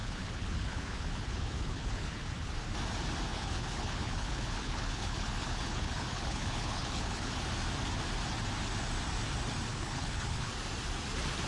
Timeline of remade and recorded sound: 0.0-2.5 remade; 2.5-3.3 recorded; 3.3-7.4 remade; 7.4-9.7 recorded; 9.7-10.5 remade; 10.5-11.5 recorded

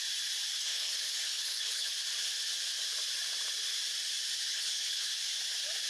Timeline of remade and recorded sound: 0.0-0.6 recorded; 0.6-1.9 remade; 1.9-4.5 recorded; 4.5-5.1 remade; 5.1-5.9 recorded

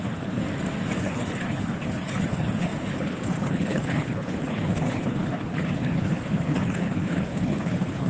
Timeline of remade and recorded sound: 0.0-0.4 remade; 0.4-1.0 recorded; 1.0-8.1 remade

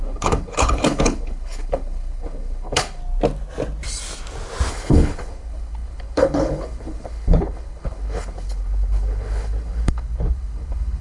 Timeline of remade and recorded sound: 0.0-3.0 remade; 3.0-4.7 recorded; 4.7-11.0 remade

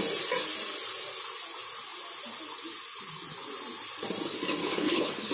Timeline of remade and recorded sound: 0.0-4.6 recorded; 4.6-5.3 remade